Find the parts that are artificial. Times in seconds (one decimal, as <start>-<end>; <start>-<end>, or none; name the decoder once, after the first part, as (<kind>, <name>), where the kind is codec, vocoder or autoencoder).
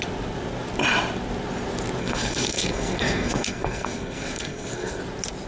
2.0-5.0 (codec, SNAC)